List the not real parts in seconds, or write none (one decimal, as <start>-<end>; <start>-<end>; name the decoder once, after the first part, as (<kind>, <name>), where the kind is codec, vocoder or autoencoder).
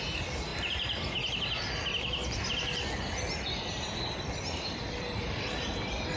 none